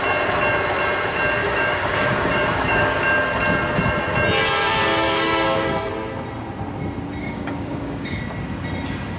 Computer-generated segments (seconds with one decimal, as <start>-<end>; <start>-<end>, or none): 1.4-3.0; 4.6-5.9; 7.2-8.2